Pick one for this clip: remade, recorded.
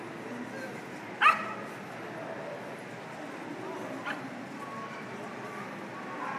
recorded